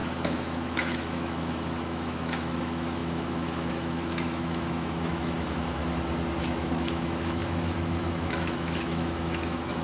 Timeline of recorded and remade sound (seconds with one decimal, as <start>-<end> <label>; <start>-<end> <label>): 0.0-5.8 remade; 5.8-6.4 recorded; 6.4-9.8 remade